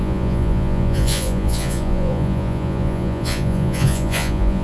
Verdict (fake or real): fake